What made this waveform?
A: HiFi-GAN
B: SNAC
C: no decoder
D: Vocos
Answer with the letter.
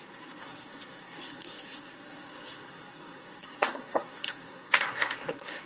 B